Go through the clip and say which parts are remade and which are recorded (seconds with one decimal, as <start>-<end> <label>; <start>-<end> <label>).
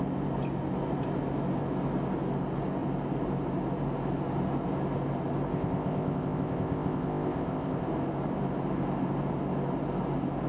0.0-5.5 recorded; 5.5-7.9 remade; 7.9-10.5 recorded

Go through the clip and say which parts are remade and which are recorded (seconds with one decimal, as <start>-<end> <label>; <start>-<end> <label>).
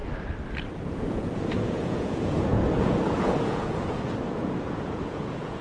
0.0-0.7 recorded; 0.7-5.6 remade